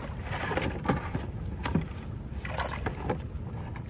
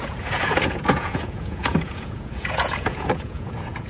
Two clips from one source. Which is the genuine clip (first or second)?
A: first